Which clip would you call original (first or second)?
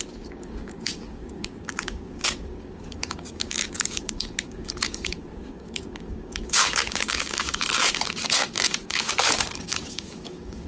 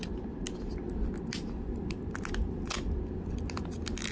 second